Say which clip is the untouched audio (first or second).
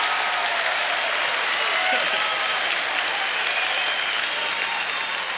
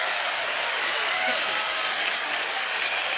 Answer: first